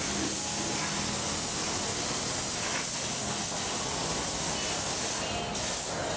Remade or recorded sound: recorded